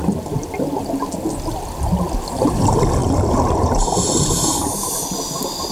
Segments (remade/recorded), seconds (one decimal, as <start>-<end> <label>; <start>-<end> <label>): 0.0-3.0 recorded; 3.0-4.9 remade; 4.9-5.7 recorded